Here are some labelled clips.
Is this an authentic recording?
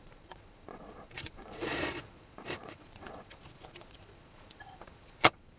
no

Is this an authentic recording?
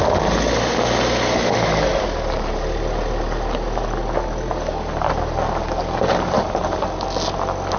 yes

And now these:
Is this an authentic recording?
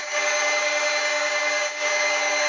no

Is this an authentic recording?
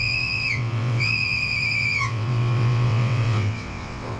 no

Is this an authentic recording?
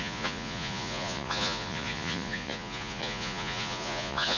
no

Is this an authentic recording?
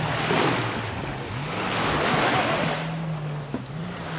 yes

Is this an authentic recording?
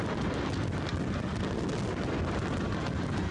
yes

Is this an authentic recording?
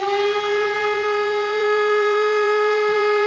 no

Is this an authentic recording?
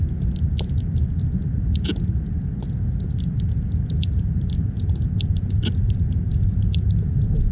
yes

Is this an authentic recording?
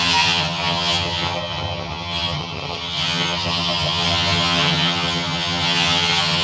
no